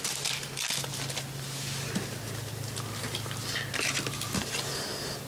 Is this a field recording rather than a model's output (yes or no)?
yes